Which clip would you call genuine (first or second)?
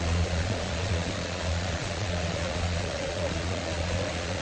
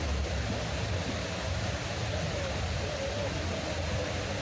second